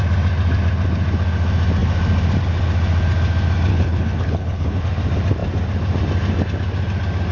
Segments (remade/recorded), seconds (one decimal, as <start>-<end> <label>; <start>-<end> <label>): 0.0-3.7 recorded; 3.7-4.8 remade; 4.8-7.3 recorded